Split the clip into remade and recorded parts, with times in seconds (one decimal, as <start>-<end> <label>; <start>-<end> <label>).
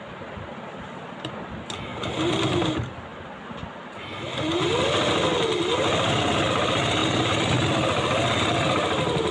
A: 0.0-9.3 recorded